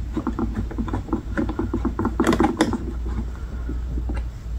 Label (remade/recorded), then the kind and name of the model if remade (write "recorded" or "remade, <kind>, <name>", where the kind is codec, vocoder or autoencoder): recorded